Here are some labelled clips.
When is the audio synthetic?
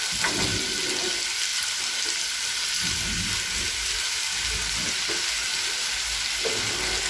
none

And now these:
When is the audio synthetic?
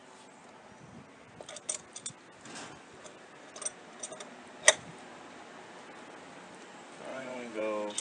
7.1-7.6 (vocoder, Vocos)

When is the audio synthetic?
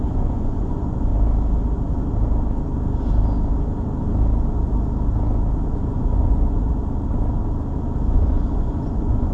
0.0-1.1 (vocoder, Vocos); 5.7-6.7; 8.1-9.3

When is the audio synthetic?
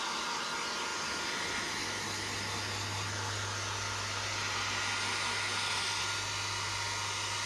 none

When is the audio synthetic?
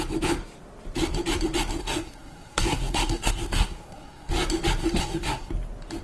1.8-4.3 (codec, SNAC); 4.8-5.5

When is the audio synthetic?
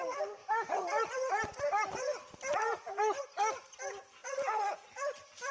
none